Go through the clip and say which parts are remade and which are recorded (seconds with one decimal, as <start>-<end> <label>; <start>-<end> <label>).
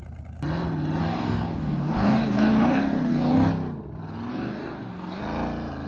0.0-1.0 recorded; 1.0-3.5 remade; 3.5-4.3 recorded; 4.3-5.2 remade; 5.2-5.9 recorded